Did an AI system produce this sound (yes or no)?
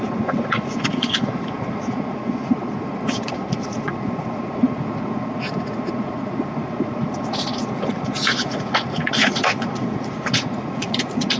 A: yes